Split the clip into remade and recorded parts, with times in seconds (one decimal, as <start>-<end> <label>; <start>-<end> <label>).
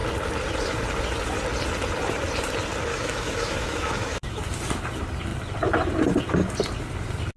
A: 0.0-2.9 recorded; 2.9-4.4 remade; 4.4-7.4 recorded